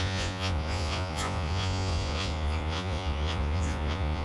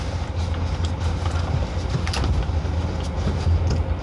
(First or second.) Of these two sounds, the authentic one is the second